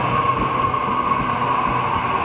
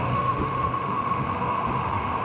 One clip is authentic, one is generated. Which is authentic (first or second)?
first